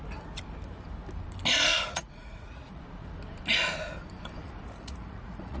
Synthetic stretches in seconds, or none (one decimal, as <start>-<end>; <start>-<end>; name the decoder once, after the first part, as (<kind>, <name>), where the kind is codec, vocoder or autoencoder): 1.7-2.8 (vocoder, Vocos); 4.4-5.6